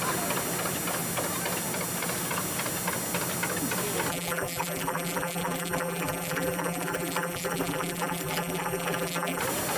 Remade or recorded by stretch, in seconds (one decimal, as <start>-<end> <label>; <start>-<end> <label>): 0.0-4.1 recorded; 4.1-9.4 remade; 9.4-9.8 recorded